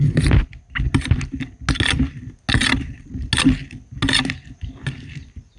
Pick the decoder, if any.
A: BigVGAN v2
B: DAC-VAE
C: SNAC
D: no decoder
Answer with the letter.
D